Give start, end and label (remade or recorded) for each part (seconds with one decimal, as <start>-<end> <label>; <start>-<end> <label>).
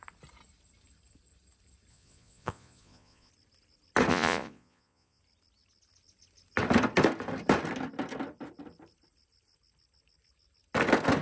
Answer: 0.0-1.9 recorded; 1.9-3.3 remade; 3.3-4.1 recorded; 4.1-5.2 remade; 5.2-11.2 recorded